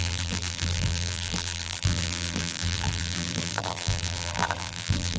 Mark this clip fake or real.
fake